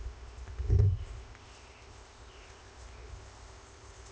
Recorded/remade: remade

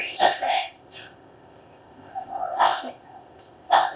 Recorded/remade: remade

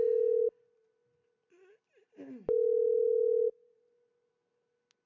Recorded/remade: recorded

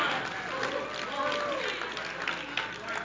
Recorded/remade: recorded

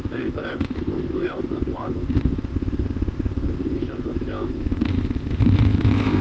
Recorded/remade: remade